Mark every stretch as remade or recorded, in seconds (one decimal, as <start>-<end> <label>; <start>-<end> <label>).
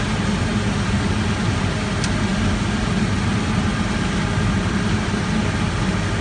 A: 0.0-6.2 recorded